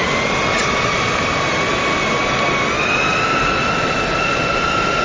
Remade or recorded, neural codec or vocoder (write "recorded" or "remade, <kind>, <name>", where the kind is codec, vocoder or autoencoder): recorded